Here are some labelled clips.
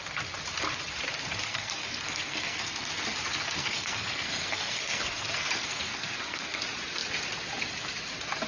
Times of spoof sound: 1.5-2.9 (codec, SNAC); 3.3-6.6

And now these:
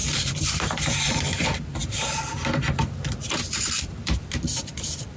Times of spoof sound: 0.0-1.2 (vocoder, BigVGAN v2); 1.8-5.2

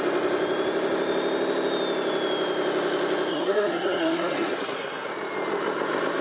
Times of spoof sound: 3.3-5.1 (codec, SNAC)